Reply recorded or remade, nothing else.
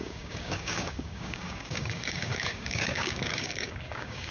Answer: remade